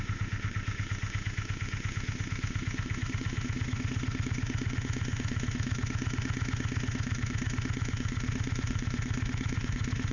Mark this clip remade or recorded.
remade